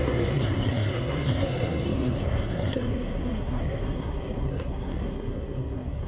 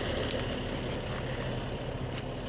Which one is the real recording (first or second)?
second